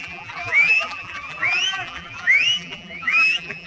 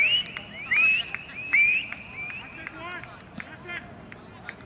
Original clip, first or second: second